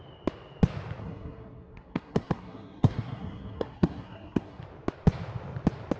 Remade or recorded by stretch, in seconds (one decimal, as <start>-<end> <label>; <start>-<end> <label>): 0.0-1.0 recorded; 1.0-4.6 remade; 4.6-6.0 recorded